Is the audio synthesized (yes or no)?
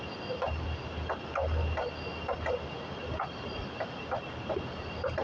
no